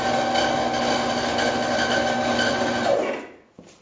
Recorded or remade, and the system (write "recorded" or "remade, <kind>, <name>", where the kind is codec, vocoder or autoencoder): recorded